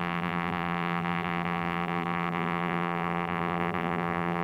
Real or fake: fake